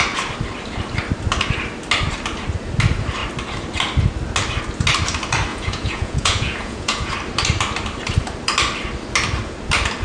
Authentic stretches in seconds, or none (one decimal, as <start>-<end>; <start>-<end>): 0.0-5.5; 7.1-10.0